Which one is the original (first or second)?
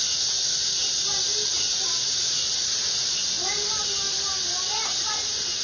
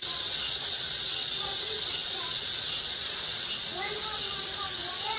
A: first